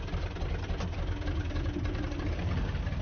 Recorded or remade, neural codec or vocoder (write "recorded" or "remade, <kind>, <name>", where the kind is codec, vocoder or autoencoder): recorded